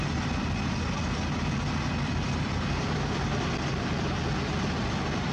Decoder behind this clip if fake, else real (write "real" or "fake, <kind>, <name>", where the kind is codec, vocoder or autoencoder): real